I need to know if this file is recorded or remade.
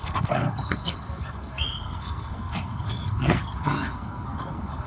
remade